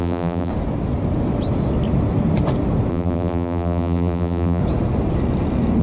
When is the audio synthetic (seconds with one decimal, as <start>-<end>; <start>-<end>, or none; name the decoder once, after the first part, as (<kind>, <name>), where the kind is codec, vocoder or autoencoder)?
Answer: 0.0-0.5 (vocoder, BigVGAN v2); 2.9-4.6